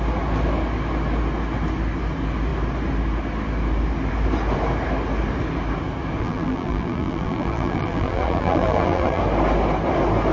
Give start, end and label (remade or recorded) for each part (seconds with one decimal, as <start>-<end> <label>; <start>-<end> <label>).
0.0-6.2 recorded; 6.2-9.2 remade; 9.2-10.3 recorded